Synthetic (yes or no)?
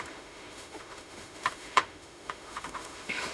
yes